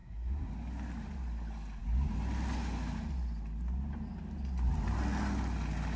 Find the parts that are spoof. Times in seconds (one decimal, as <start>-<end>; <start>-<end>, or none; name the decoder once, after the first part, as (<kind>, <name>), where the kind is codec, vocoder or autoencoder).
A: 0.0-0.5 (codec, SNAC)

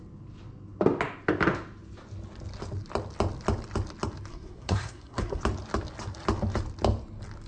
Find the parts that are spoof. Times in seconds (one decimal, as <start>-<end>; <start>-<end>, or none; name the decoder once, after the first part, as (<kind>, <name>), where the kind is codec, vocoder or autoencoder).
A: 4.3-5.4 (codec, SNAC)

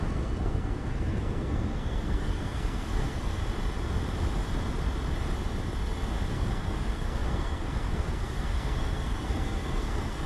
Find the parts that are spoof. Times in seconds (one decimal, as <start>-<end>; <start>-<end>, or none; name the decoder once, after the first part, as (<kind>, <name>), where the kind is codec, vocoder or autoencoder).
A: 0.0-3.4 (codec, SNAC); 6.3-10.3